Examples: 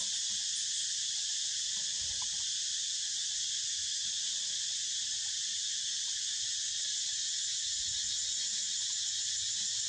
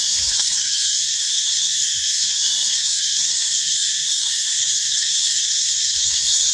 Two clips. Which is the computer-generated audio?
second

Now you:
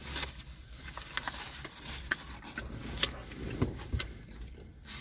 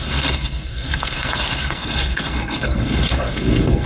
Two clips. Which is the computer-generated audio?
second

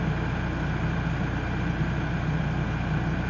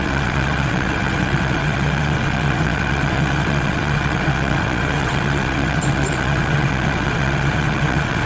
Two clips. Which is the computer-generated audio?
second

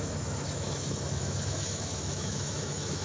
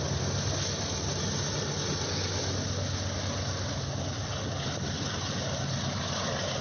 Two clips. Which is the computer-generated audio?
first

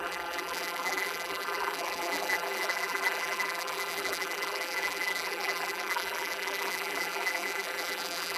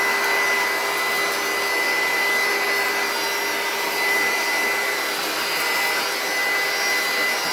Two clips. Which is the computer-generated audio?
first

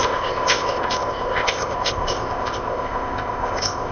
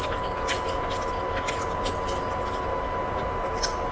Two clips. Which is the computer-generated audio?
first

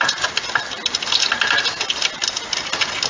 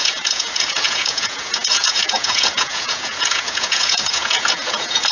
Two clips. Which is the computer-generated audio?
second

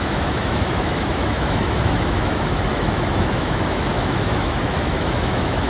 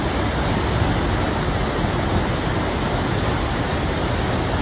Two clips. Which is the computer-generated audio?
first